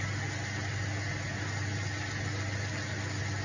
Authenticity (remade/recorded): recorded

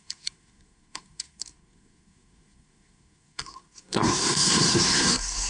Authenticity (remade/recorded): remade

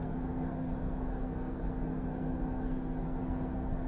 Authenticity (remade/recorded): remade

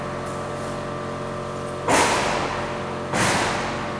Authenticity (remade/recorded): recorded